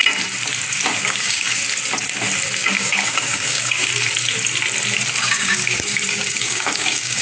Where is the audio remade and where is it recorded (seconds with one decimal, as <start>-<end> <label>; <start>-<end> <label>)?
0.0-1.0 recorded; 1.0-1.6 remade; 1.6-2.6 recorded; 2.6-3.9 remade; 3.9-5.2 recorded; 5.2-7.2 remade